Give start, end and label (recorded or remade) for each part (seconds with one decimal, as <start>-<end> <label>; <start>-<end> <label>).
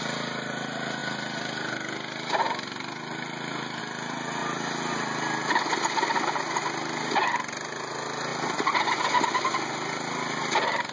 0.0-10.9 recorded